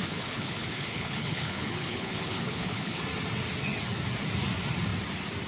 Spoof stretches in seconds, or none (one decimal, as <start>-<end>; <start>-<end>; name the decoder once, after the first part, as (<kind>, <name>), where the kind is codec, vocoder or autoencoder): 0.0-3.0 (codec, HILCodec)